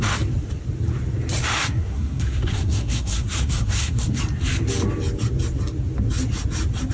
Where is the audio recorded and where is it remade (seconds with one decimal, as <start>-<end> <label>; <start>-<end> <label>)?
0.0-1.6 recorded; 1.6-4.2 remade; 4.2-6.9 recorded